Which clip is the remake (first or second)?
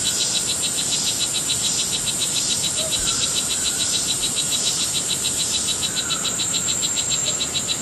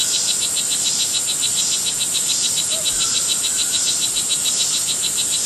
first